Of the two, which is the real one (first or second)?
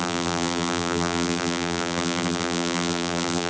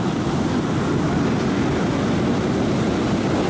second